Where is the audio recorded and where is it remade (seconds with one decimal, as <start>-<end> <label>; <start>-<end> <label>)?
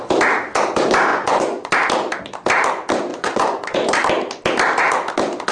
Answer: 0.0-1.1 recorded; 1.1-1.7 remade; 1.7-3.1 recorded; 3.1-3.9 remade; 3.9-5.5 recorded